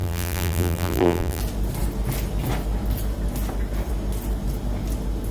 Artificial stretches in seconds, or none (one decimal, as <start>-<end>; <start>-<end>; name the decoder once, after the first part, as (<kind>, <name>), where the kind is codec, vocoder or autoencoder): 0.0-1.4 (vocoder, BigVGAN v2)